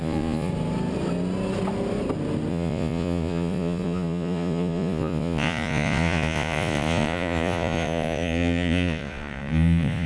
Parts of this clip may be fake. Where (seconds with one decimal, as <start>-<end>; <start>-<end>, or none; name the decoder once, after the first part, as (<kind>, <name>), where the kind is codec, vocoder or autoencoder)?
0.0-0.5 (vocoder, Vocos); 2.5-10.1

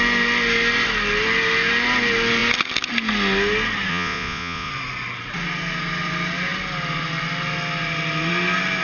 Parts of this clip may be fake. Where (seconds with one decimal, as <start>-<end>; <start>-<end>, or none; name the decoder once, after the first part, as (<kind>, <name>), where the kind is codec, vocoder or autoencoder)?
3.9-4.7 (vocoder, Vocos)

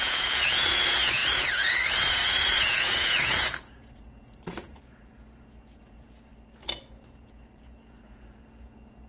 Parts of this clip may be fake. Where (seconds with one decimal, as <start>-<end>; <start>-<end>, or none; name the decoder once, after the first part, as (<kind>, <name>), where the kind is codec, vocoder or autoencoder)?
0.0-6.3 (vocoder, Vocos); 6.9-9.1

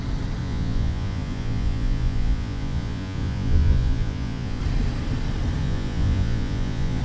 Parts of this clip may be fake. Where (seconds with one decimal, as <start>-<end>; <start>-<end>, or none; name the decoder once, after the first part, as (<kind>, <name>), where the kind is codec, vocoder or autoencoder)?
0.4-4.6 (vocoder, Vocos); 5.6-7.0